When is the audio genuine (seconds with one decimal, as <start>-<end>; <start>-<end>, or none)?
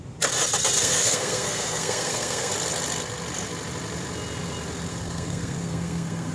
0.0-0.8; 2.5-4.9